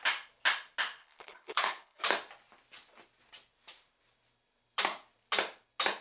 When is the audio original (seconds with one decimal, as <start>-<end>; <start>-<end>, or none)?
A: 0.0-1.0; 2.0-6.0